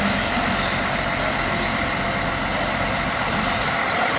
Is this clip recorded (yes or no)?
yes